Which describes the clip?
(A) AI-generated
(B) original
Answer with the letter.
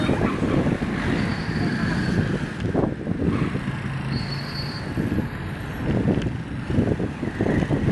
B